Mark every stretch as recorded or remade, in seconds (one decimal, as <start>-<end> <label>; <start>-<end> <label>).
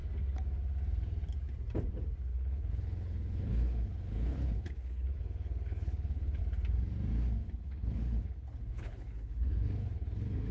0.0-2.3 recorded; 2.3-6.4 remade; 6.4-7.4 recorded; 7.4-10.5 remade